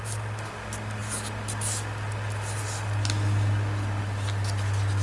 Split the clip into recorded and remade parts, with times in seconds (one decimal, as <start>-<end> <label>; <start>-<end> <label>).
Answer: 0.0-5.0 recorded